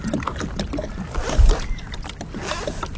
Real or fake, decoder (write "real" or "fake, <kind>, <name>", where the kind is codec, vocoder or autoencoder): real